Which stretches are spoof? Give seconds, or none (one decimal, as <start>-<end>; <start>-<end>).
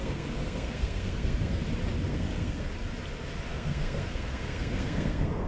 0.0-1.6; 2.1-2.7; 3.5-5.5